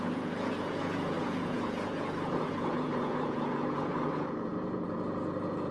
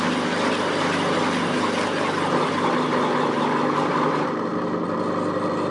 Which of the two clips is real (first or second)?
second